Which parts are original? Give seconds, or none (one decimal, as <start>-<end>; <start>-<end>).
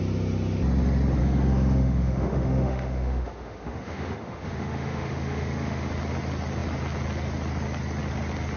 0.0-1.2; 5.9-8.6